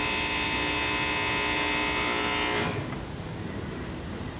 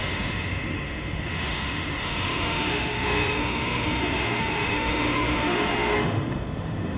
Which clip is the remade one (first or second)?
second